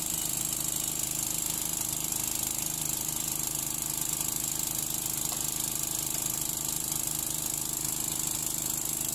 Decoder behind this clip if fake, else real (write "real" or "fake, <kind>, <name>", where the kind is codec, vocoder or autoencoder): real